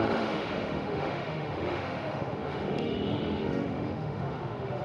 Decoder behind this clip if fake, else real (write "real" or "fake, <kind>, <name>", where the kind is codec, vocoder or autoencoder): fake, autoencoder, DAC-VAE